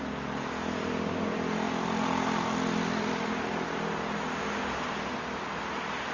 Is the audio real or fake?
real